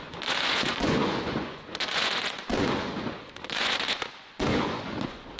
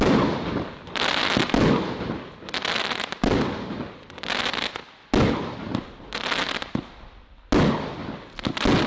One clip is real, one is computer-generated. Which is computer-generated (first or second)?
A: first